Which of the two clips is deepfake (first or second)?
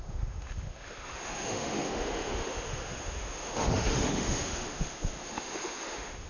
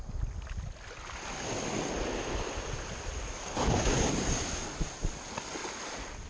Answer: first